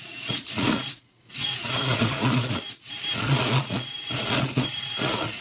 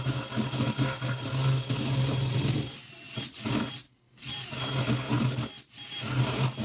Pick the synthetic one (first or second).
first